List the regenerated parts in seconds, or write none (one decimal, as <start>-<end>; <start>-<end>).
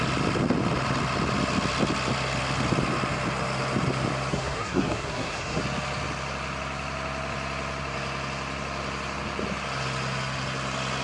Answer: 4.3-5.6